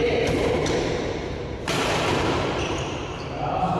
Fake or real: fake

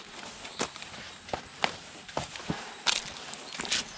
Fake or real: real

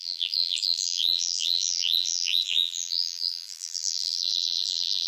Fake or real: fake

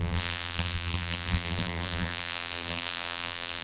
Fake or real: fake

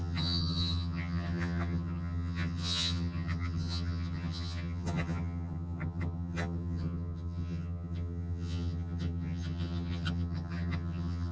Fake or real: fake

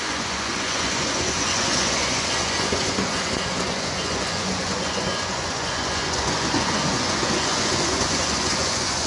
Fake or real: fake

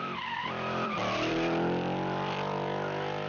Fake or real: fake